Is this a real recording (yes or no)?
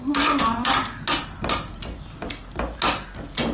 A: yes